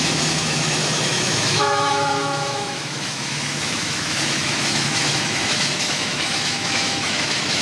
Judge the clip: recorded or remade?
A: remade